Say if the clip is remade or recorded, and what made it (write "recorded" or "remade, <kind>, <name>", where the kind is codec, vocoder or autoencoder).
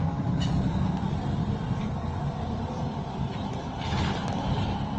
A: remade, vocoder, BigVGAN v2